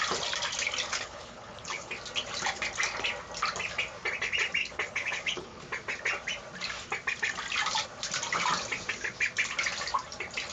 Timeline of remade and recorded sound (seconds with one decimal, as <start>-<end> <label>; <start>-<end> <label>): 0.0-0.9 recorded; 0.9-1.9 remade; 1.9-4.6 recorded; 4.6-5.6 remade; 5.6-10.5 recorded

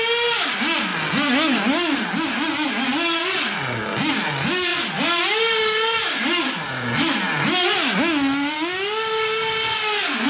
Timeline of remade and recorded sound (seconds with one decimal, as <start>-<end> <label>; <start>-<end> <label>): 0.0-10.3 recorded

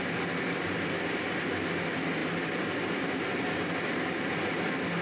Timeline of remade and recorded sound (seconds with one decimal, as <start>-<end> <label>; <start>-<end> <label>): 0.0-5.0 recorded

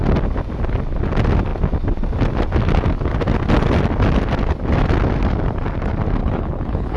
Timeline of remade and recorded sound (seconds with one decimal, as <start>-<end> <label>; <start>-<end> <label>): 0.0-6.2 recorded; 6.2-7.0 remade

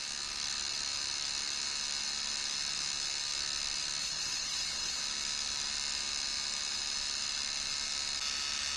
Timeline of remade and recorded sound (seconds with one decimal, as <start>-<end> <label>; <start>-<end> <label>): 0.0-4.0 recorded; 4.0-5.0 remade; 5.0-8.8 recorded

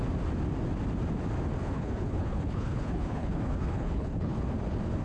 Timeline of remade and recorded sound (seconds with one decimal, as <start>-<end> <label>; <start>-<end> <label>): 0.0-1.6 recorded; 1.6-4.4 remade; 4.4-5.0 recorded

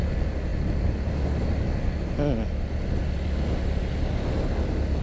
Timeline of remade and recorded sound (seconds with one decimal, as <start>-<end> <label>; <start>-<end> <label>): 0.0-5.0 recorded

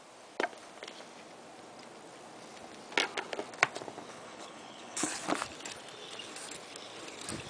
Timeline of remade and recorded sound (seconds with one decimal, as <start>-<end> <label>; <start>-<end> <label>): 0.0-4.1 recorded; 4.1-5.1 remade; 5.1-7.5 recorded